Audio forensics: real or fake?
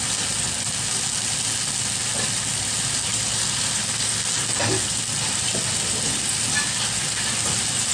real